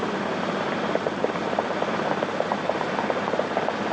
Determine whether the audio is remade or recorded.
recorded